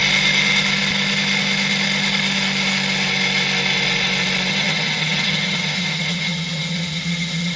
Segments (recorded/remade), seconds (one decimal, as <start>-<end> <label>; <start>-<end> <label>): 0.0-4.5 recorded; 4.5-7.6 remade